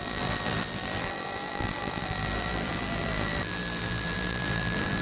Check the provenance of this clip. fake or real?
fake